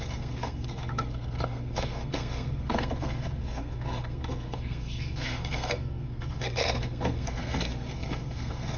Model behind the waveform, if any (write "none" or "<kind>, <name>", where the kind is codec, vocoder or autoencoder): codec, SNAC